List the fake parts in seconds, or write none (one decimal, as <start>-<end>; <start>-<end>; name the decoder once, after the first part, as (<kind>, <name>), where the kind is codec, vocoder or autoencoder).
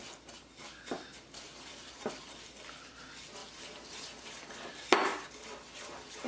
1.1-2.3 (vocoder, BigVGAN v2); 3.4-4.4